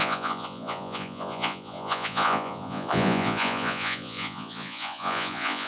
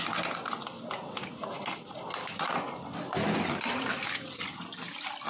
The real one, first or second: second